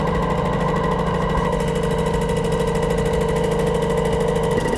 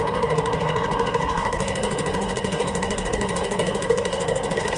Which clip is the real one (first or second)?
first